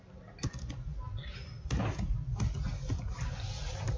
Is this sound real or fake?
real